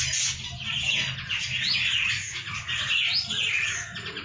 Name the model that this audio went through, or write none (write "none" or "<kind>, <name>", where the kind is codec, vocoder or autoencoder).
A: none